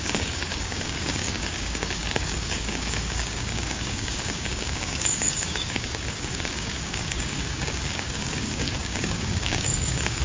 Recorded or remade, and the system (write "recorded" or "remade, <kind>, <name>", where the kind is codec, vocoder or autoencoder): remade, codec, DAC